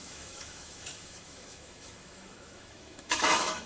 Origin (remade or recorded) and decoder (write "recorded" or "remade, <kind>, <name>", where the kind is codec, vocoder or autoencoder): remade, autoencoder, DAC-VAE